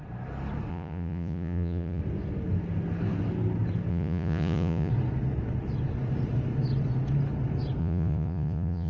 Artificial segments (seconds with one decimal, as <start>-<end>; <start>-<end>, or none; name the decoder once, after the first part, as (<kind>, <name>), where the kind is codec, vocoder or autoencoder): 0.7-2.0 (vocoder, Vocos); 3.9-4.9; 7.8-8.9